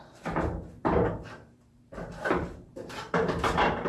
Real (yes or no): no